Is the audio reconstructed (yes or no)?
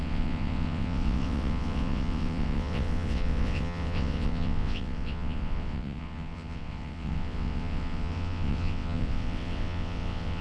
yes